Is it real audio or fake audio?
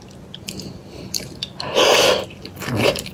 real